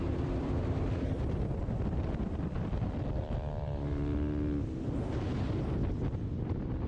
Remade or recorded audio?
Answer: remade